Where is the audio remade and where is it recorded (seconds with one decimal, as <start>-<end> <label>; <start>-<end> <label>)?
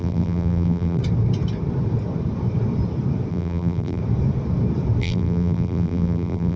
0.0-1.0 remade; 1.0-3.3 recorded; 3.3-4.0 remade; 4.0-5.0 recorded; 5.0-6.6 remade